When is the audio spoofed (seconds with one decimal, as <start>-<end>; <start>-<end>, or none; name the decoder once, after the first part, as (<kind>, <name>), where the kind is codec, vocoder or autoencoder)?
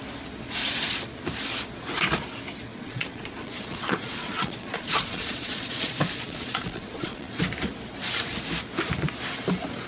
2.7-7.4 (vocoder, Vocos)